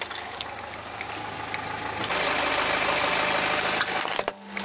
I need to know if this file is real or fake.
real